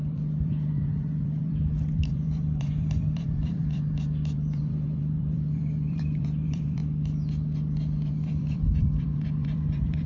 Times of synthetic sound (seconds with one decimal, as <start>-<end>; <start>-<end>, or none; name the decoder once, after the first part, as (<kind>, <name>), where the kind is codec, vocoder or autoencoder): 0.0-6.8 (vocoder, BigVGAN v2); 8.1-10.1